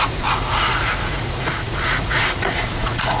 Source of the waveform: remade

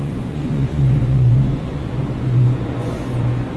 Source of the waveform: remade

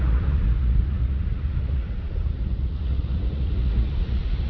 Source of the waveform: remade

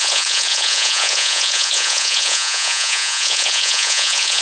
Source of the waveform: remade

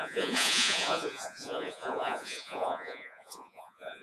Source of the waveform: remade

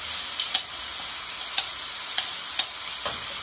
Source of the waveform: recorded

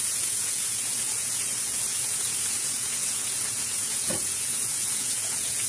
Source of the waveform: remade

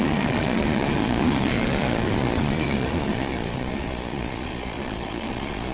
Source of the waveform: remade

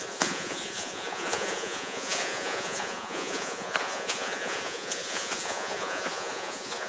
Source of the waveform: remade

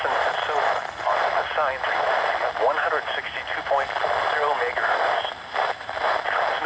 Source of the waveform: recorded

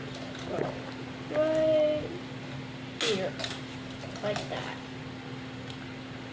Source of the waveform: recorded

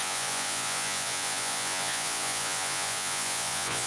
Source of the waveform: remade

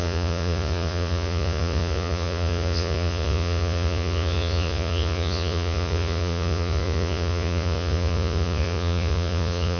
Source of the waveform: remade